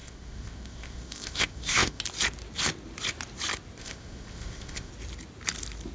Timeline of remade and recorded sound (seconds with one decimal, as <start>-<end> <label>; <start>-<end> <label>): 0.0-2.0 remade; 2.0-3.8 recorded; 3.8-4.9 remade; 4.9-5.9 recorded

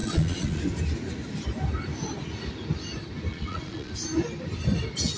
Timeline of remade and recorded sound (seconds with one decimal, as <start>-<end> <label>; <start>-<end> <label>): 0.0-0.6 remade; 0.6-3.3 recorded; 3.3-3.9 remade; 3.9-5.2 recorded